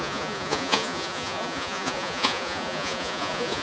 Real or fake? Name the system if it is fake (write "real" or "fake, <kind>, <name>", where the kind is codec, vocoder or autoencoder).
fake, vocoder, Vocos